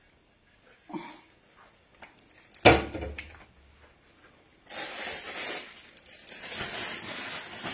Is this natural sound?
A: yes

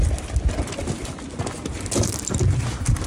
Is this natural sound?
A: yes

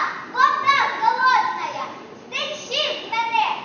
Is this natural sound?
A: no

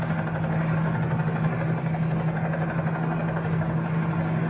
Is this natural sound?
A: yes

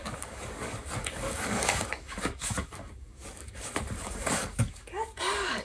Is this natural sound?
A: no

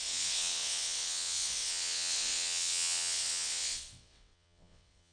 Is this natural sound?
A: no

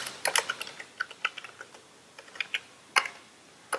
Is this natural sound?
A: yes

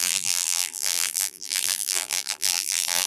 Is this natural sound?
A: no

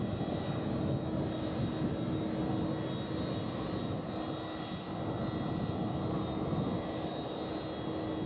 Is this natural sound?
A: yes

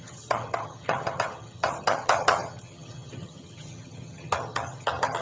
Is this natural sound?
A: no